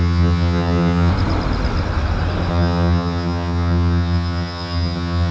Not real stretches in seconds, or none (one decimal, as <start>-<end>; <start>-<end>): 0.0-1.1; 2.5-5.3